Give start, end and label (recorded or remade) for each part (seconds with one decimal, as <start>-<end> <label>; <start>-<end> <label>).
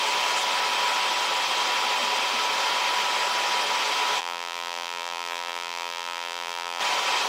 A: 0.0-4.2 recorded; 4.2-6.8 remade; 6.8-7.3 recorded